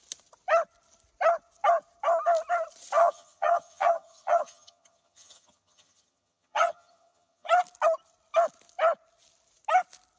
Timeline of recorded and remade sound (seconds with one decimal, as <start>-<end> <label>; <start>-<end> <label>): 0.0-3.0 recorded; 3.0-7.5 remade; 7.5-10.2 recorded